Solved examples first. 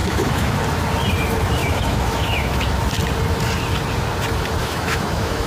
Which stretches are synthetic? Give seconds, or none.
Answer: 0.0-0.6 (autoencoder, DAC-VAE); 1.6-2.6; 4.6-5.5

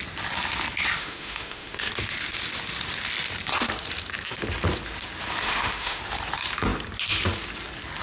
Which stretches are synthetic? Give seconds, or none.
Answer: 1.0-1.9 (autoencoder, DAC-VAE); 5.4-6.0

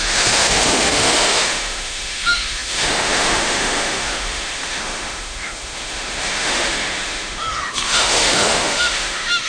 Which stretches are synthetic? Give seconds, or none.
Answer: 0.0-9.5 (autoencoder, DAC-VAE)

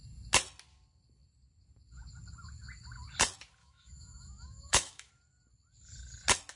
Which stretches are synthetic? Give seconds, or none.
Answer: 3.6-5.1 (autoencoder, DAC-VAE)

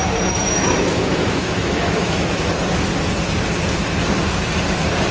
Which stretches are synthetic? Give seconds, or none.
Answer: 0.4-2.5 (autoencoder, DAC-VAE)

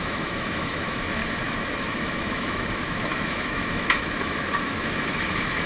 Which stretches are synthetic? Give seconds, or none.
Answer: 0.0-1.2 (autoencoder, DAC-VAE); 1.8-5.7